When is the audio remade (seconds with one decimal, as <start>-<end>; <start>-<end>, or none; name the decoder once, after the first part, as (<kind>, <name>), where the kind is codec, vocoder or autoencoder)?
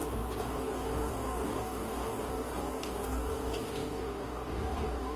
0.0-5.2 (codec, DAC)